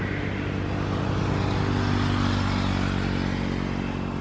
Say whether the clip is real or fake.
real